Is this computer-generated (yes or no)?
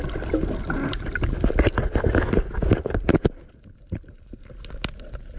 no